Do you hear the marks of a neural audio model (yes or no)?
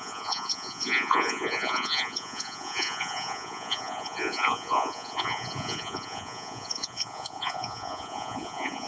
yes